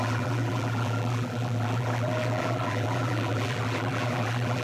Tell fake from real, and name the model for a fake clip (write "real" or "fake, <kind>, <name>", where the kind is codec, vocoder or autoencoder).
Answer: fake, vocoder, BigVGAN v2